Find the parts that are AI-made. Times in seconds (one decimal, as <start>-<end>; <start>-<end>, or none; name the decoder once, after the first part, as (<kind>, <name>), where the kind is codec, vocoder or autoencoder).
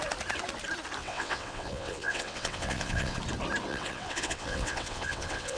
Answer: 1.0-3.2 (vocoder, WaveNeXt); 3.7-5.6